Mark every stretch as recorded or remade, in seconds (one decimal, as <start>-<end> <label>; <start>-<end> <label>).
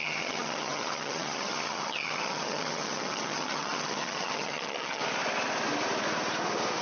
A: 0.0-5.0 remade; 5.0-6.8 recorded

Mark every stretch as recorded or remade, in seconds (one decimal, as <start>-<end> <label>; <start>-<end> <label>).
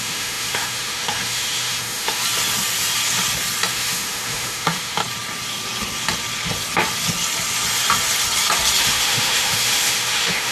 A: 0.0-2.2 remade; 2.2-3.7 recorded; 3.7-5.0 remade; 5.0-8.8 recorded; 8.8-10.5 remade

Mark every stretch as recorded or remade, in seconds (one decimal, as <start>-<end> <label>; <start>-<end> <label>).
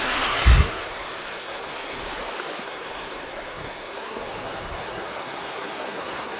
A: 0.0-2.0 remade; 2.0-2.6 recorded; 2.6-6.4 remade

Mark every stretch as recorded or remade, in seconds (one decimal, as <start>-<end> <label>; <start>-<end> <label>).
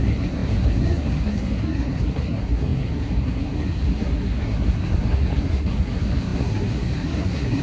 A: 0.0-7.6 remade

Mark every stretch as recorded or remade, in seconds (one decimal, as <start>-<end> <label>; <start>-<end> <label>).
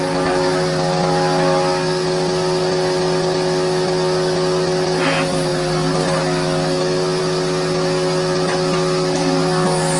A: 0.0-10.0 recorded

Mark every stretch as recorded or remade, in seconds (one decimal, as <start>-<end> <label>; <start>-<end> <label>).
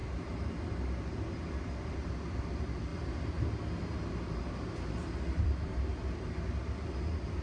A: 0.0-7.4 recorded